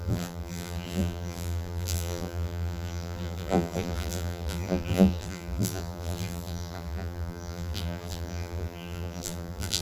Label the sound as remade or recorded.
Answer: remade